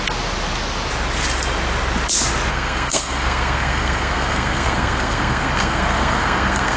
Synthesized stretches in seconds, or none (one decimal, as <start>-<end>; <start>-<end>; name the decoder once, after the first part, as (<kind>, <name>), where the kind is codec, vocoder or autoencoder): 2.5-6.8 (codec, SNAC)